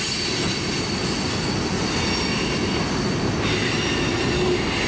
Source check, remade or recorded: recorded